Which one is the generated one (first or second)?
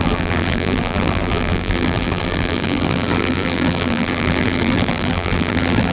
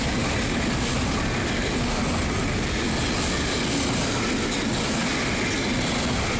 first